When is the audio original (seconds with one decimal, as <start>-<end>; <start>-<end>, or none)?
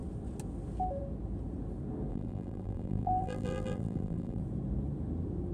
0.0-2.1; 4.4-5.5